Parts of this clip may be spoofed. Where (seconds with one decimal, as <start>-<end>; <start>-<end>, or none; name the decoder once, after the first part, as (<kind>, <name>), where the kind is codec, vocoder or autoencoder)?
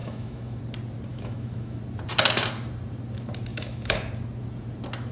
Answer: 0.0-0.6 (autoencoder, DAC-VAE); 1.1-1.8; 3.5-4.1